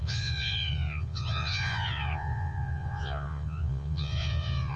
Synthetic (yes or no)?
yes